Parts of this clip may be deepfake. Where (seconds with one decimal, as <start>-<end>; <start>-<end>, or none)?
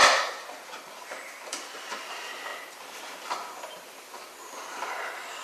0.0-2.1